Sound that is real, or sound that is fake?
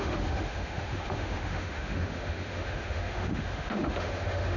fake